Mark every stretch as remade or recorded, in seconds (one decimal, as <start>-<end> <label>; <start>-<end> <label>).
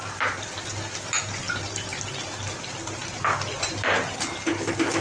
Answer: 0.0-5.0 recorded